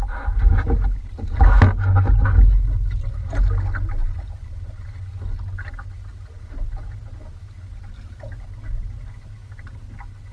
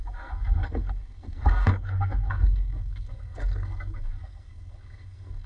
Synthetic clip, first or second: second